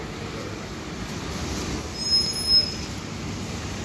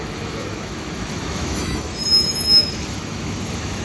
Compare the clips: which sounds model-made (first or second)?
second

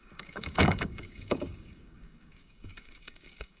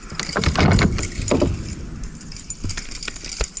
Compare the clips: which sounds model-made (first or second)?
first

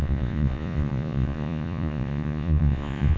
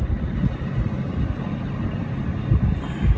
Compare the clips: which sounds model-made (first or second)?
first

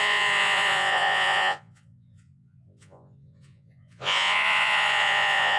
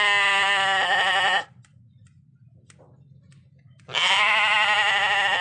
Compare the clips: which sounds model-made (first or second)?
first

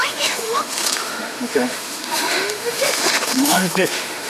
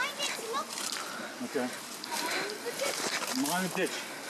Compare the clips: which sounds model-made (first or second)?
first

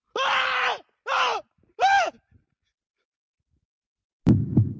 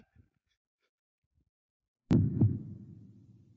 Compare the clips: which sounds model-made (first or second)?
second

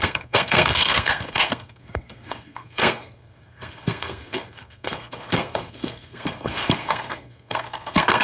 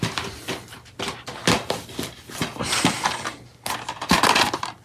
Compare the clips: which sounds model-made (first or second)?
first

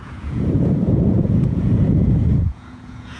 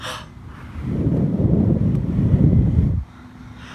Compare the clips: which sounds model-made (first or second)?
first